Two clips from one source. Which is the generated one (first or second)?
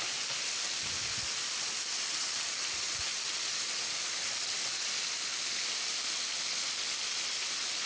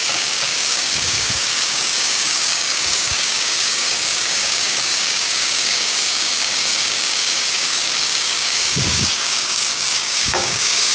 second